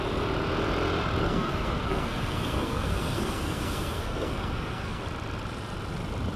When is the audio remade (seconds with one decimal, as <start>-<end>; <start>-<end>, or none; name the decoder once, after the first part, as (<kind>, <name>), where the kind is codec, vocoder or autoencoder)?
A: 1.2-5.0 (codec, SNAC)